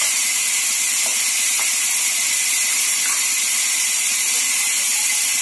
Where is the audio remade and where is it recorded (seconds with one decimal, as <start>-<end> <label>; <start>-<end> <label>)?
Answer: 0.0-1.1 recorded; 1.1-4.3 remade; 4.3-5.4 recorded